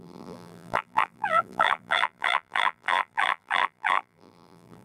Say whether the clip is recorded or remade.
remade